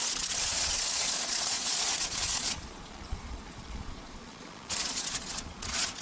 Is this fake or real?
fake